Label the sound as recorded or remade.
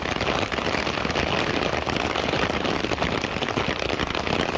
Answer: recorded